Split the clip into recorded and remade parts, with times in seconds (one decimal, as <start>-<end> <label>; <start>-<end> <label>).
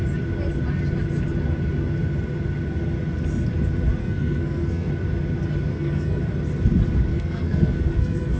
0.0-4.0 recorded; 4.0-4.9 remade; 4.9-5.7 recorded; 5.7-6.2 remade; 6.2-7.1 recorded; 7.1-8.4 remade